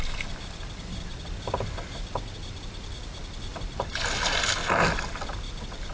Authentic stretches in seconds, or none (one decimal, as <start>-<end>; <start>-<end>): 0.0-5.9